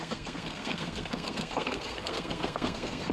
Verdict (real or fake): fake